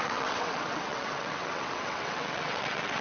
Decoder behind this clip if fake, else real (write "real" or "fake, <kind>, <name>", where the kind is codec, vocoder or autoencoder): fake, vocoder, WaveNeXt